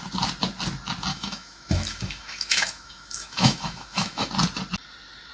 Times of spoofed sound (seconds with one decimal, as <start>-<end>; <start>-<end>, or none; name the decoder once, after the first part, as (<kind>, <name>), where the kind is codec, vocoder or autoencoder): 1.1-4.3 (autoencoder, DAC-VAE)

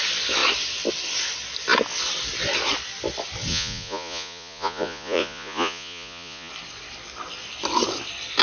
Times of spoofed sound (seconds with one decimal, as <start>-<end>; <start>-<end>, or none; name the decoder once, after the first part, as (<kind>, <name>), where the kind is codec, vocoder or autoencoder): 3.5-6.5 (vocoder, Vocos)

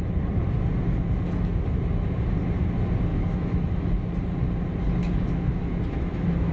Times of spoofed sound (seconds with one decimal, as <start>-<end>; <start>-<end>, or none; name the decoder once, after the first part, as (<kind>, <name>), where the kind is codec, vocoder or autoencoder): 3.1-3.7 (autoencoder, DAC-VAE); 5.0-6.5

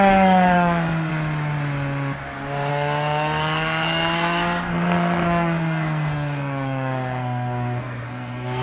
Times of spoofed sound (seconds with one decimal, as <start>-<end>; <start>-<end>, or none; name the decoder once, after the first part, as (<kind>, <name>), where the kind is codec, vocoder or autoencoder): 0.0-1.1 (codec, SNAC); 2.7-8.6